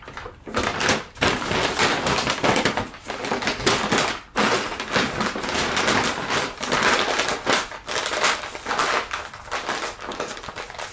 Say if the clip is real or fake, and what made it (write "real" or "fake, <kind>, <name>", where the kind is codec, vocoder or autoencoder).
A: real